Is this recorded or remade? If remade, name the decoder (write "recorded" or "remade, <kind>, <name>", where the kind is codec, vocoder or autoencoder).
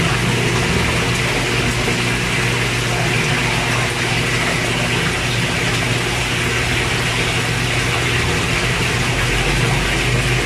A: recorded